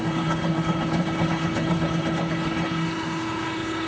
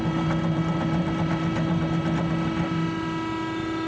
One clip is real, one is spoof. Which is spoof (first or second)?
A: first